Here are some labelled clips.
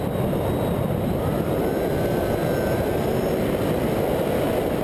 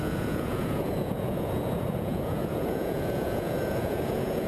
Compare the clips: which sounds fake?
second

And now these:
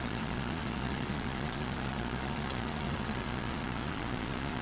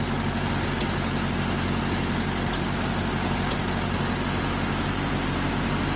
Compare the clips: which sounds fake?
first